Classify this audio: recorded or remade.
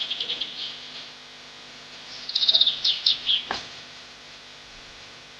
recorded